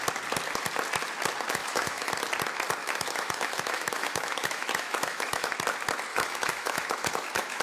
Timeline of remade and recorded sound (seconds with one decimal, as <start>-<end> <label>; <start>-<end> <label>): 0.0-1.6 recorded; 1.6-2.1 remade; 2.1-2.8 recorded; 2.8-5.5 remade; 5.5-6.1 recorded; 6.1-7.6 remade